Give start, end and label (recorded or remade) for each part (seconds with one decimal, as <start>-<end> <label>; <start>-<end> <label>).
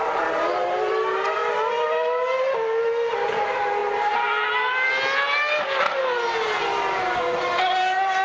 0.0-1.4 remade; 1.4-3.1 recorded; 3.1-3.8 remade; 3.8-7.2 recorded; 7.2-8.2 remade